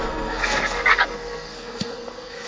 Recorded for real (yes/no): no